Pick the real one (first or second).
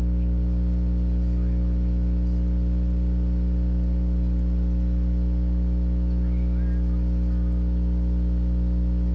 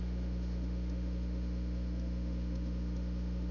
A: first